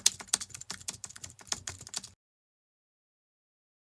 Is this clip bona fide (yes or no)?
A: yes